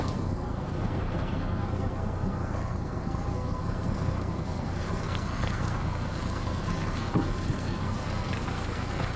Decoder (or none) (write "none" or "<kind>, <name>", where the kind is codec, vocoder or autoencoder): codec, SNAC